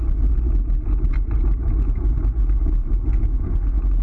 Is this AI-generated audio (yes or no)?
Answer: no